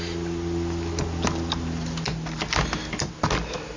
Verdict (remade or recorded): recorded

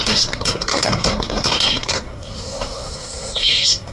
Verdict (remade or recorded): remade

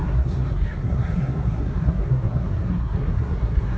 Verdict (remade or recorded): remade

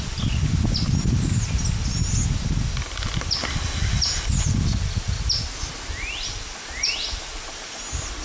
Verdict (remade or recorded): recorded